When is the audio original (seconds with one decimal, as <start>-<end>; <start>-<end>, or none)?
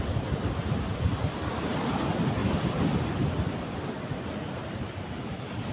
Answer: 2.4-4.5